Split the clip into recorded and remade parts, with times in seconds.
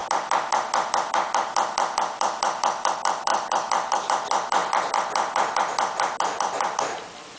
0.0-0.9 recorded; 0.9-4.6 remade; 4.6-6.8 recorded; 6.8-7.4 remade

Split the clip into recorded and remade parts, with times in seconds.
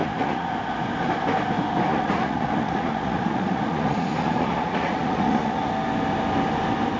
0.0-0.5 remade; 0.5-1.9 recorded; 1.9-5.7 remade; 5.7-7.0 recorded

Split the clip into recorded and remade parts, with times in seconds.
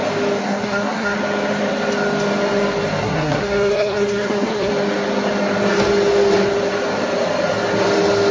0.0-0.4 recorded; 0.4-1.2 remade; 1.2-3.0 recorded; 3.0-4.7 remade; 4.7-8.3 recorded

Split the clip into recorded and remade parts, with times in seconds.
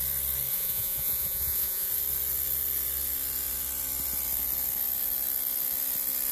0.0-0.5 recorded; 0.5-1.9 remade; 1.9-6.3 recorded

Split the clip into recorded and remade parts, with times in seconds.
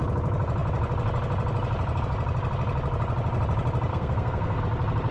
0.0-3.9 recorded; 3.9-4.6 remade; 4.6-5.1 recorded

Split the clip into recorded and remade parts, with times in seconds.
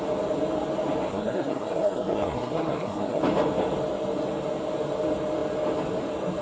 0.0-1.1 recorded; 1.1-3.2 remade; 3.2-6.4 recorded